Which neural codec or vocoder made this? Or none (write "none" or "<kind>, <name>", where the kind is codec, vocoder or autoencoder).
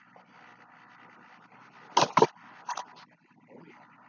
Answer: none